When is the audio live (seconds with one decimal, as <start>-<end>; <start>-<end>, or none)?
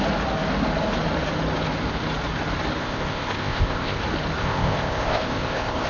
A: 0.0-2.8; 4.0-4.4